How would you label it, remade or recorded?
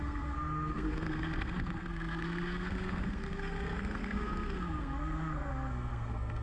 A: remade